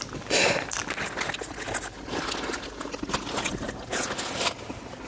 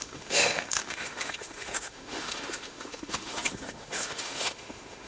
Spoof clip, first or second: second